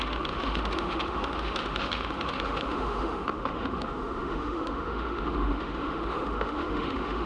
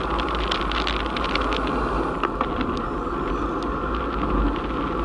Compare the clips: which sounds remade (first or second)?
first